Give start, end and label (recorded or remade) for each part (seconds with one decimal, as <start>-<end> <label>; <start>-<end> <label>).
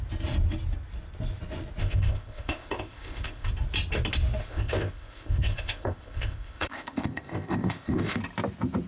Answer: 0.0-1.8 recorded; 1.8-3.5 remade; 3.5-4.4 recorded; 4.4-8.2 remade; 8.2-8.9 recorded